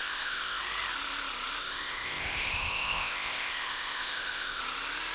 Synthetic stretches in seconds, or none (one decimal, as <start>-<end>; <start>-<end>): 0.0-0.6; 1.6-4.6